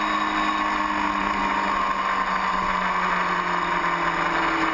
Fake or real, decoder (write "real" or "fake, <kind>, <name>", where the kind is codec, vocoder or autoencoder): real